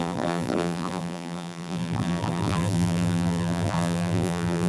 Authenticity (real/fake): fake